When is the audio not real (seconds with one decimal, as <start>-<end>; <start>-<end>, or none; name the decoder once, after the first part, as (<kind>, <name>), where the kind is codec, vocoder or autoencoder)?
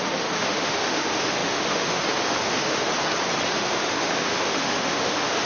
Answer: 0.0-2.9 (autoencoder, DAC-VAE); 3.6-5.5